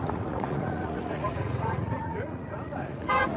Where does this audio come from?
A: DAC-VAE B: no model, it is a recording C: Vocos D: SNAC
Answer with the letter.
C